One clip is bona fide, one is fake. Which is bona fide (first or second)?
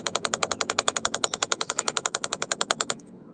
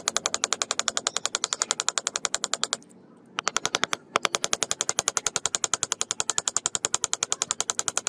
second